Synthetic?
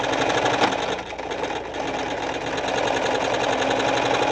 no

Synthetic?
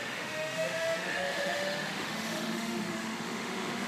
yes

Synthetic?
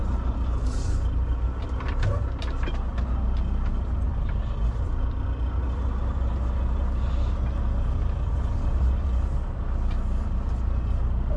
no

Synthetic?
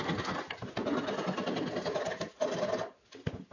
no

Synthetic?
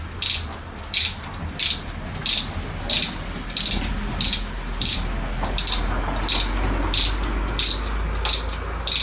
no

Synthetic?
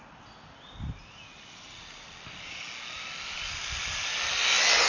no